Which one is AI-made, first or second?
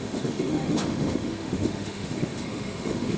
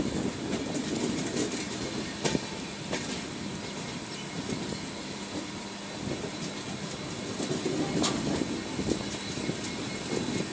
first